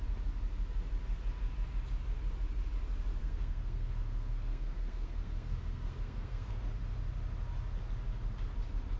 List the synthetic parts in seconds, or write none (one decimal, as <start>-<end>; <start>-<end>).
3.2-6.5